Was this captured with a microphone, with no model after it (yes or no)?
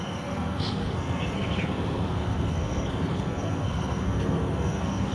no